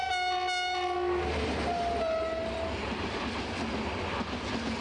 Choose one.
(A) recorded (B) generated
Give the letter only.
A